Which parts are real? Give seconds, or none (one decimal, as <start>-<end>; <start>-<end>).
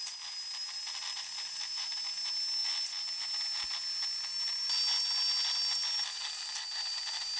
0.0-7.4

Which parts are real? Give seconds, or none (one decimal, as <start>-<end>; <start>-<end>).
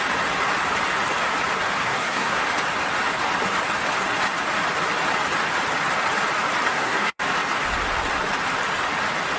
0.0-1.8; 2.4-6.7; 7.2-9.4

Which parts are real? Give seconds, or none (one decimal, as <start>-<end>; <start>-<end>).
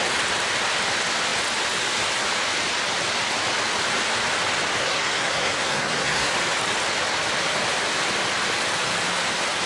0.0-4.8; 6.3-9.7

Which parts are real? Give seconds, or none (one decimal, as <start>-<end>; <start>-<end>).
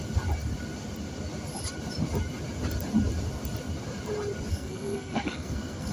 0.0-4.5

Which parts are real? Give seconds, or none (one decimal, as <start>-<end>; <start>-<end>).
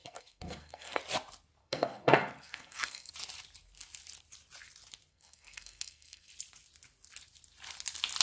1.0-1.6; 3.1-5.1; 6.3-8.2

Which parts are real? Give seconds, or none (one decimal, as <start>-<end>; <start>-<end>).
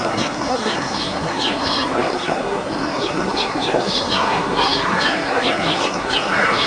none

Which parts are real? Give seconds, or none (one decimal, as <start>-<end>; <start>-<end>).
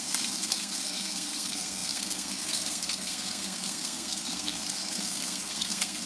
none